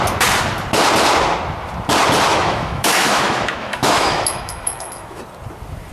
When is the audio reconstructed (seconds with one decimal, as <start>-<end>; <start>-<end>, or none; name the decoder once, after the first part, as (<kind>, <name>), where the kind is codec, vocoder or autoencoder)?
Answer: 2.3-5.2 (autoencoder, DAC-VAE)